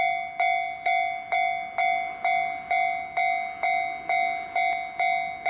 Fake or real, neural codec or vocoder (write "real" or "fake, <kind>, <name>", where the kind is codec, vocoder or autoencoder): real